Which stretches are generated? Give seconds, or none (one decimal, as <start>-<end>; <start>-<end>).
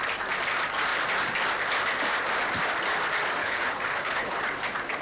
3.4-4.4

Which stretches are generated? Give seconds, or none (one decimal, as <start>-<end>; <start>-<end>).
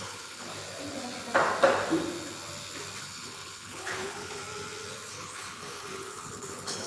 0.0-0.5; 3.0-4.4; 5.1-6.9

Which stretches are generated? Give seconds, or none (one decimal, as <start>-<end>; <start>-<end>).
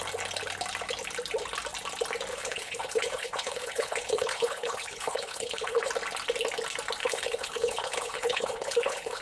2.3-5.9; 7.0-9.2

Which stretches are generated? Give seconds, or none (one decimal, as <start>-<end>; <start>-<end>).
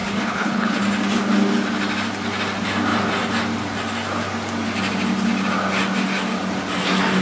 0.0-0.8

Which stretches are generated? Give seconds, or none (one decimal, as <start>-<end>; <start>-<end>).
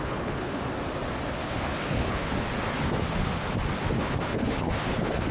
0.0-0.6; 1.3-2.5; 4.0-5.3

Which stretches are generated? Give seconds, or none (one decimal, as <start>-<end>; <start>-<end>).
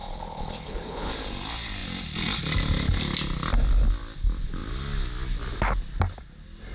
0.0-1.1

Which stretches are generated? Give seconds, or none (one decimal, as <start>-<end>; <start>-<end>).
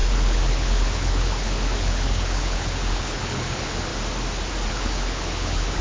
0.0-3.9; 4.7-5.8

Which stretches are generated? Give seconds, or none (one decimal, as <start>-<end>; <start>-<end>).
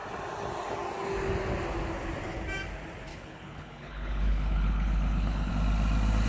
3.1-5.5